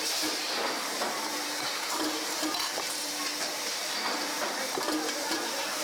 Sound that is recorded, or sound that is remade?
remade